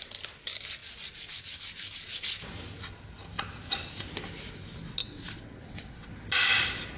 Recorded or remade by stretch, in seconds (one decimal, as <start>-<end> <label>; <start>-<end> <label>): 0.0-5.0 recorded; 5.0-6.1 remade; 6.1-7.0 recorded

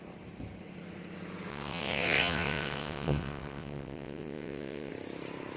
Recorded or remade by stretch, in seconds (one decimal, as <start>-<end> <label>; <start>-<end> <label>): 0.0-1.5 recorded; 1.5-4.9 remade; 4.9-5.6 recorded

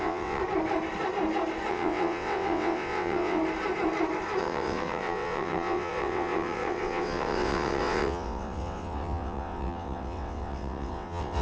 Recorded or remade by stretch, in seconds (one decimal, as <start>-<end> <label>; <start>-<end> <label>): 0.0-0.4 remade; 0.4-1.7 recorded; 1.7-3.4 remade; 3.4-4.4 recorded; 4.4-11.4 remade

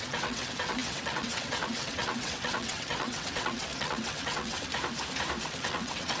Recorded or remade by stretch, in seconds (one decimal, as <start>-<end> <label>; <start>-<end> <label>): 0.0-4.7 remade; 4.7-5.4 recorded; 5.4-6.2 remade

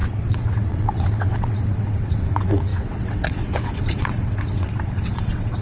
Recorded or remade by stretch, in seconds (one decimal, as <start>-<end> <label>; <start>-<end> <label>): 0.0-5.6 remade

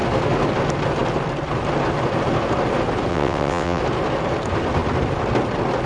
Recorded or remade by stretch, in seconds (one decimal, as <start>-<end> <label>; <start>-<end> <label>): 0.0-3.1 recorded; 3.1-3.8 remade; 3.8-5.9 recorded

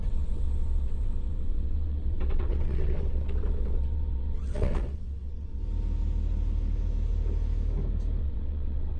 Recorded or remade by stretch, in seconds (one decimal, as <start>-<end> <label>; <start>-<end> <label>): 0.0-5.6 remade; 5.6-8.2 recorded; 8.2-9.0 remade